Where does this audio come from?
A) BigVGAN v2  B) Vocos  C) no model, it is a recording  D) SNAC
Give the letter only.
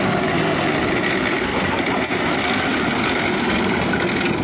C